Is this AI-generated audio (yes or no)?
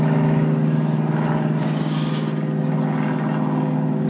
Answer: no